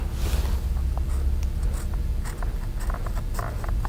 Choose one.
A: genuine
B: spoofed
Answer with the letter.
A